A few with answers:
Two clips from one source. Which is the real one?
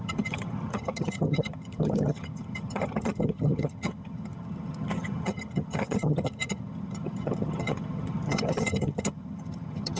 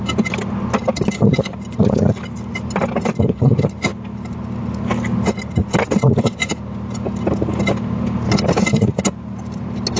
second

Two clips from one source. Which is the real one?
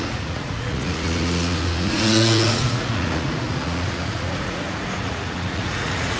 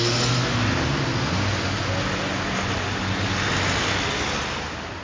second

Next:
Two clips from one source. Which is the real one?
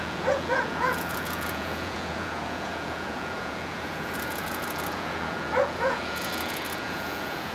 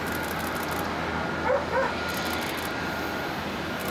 second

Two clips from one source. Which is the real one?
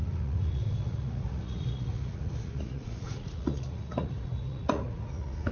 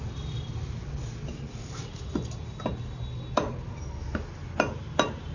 second